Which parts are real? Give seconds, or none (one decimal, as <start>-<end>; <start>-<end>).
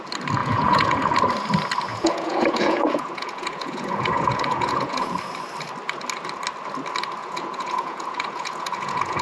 0.0-0.4; 1.0-1.9; 5.1-7.2